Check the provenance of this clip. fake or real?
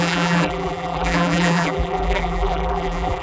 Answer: fake